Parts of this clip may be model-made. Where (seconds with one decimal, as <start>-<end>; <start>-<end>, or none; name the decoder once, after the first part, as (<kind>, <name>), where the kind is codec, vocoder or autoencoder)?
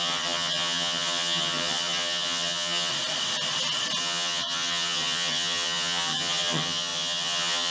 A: 0.0-2.9 (vocoder, HiFi-GAN); 4.0-7.7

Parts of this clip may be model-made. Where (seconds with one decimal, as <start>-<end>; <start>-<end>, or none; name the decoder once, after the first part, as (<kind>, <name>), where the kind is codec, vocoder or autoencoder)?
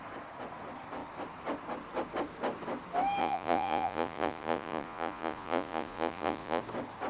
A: 3.2-6.6 (vocoder, Vocos)